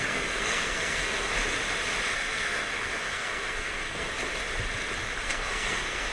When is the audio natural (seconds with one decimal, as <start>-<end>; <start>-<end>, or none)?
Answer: 1.3-2.1; 4.1-5.2